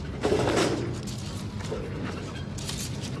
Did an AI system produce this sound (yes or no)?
no